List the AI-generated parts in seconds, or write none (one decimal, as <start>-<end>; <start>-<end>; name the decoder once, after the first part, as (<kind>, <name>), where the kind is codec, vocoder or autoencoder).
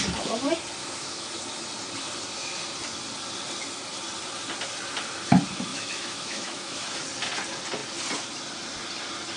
0.8-1.3 (autoencoder, DAC-VAE); 5.7-7.0